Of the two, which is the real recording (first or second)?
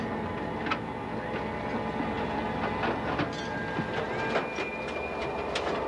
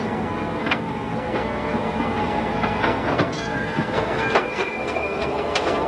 first